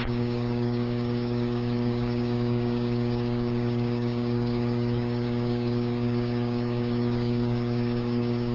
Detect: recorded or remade remade